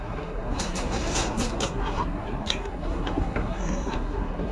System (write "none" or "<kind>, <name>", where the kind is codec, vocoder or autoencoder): codec, SNAC